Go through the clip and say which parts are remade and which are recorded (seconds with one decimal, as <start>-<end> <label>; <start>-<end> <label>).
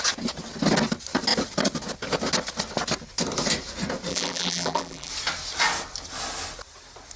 0.0-4.1 recorded; 4.1-5.1 remade; 5.1-7.2 recorded